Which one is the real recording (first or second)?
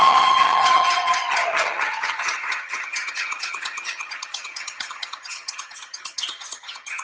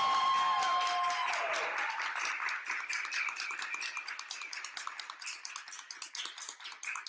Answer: second